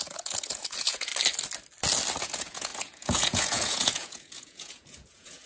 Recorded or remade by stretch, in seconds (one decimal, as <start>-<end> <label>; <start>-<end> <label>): 0.0-1.1 remade; 1.1-2.2 recorded; 2.2-5.5 remade